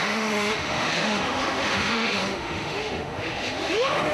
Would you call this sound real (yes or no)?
no